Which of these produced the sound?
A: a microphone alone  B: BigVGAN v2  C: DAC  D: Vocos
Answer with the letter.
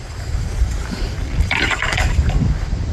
B